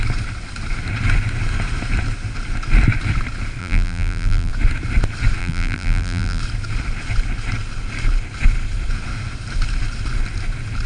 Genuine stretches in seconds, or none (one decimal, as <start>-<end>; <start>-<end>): 0.0-3.6; 4.5-5.4; 6.4-10.9